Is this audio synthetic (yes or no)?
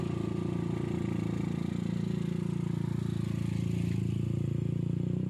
no